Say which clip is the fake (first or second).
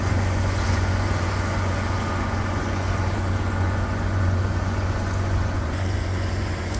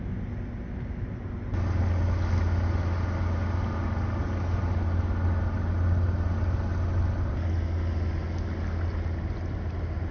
first